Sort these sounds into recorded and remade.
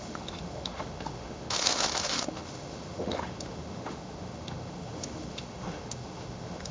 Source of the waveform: remade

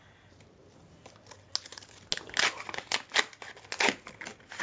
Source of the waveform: recorded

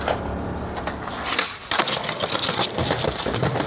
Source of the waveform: recorded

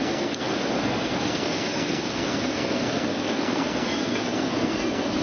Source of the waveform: remade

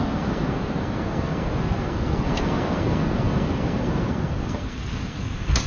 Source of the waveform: remade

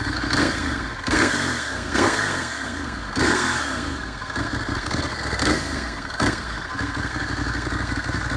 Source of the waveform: remade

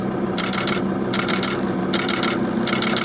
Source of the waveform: remade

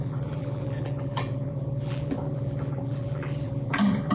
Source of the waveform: remade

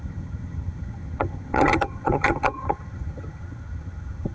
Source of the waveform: remade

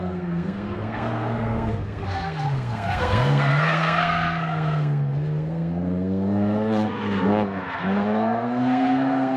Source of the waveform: remade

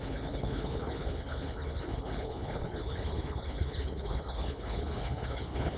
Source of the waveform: remade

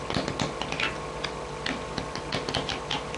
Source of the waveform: recorded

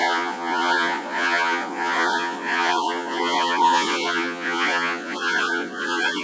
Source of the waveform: remade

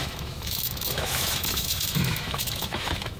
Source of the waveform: remade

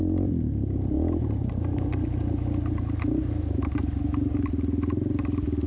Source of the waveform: recorded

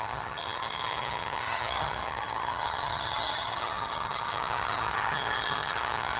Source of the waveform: remade